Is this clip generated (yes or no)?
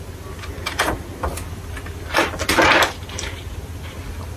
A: no